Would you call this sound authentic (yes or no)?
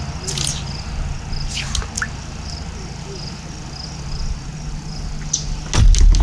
yes